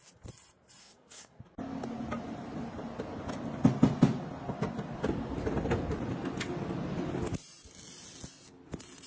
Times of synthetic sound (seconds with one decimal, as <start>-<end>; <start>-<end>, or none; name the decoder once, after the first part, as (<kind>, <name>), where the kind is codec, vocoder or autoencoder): 0.8-1.4 (codec, SNAC)